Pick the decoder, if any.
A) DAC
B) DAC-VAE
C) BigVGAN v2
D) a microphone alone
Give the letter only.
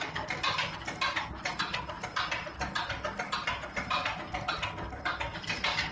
D